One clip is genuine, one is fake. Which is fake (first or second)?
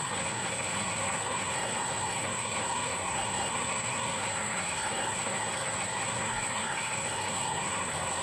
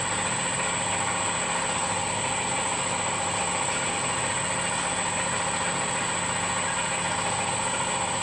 first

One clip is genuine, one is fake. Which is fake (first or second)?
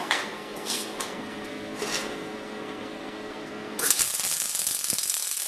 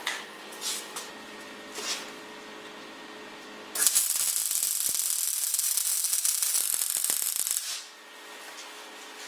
first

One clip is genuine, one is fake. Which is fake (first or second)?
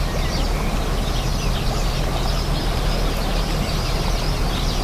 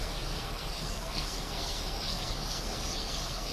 second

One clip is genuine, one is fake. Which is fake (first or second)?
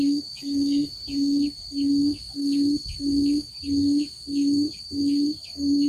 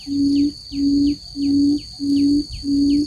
first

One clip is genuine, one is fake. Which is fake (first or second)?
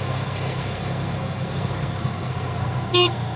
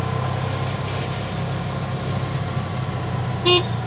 first